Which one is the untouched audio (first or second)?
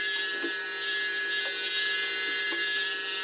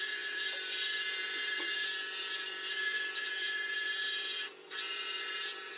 first